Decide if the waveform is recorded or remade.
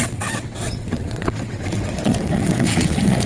remade